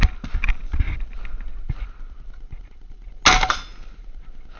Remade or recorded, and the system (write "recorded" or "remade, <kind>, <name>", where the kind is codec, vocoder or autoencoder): recorded